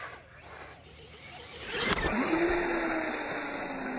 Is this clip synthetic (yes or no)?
no